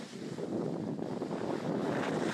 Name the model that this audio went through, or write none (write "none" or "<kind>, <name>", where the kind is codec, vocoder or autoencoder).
none